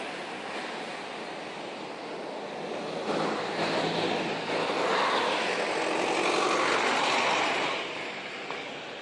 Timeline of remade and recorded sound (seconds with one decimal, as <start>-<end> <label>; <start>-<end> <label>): 0.0-9.0 recorded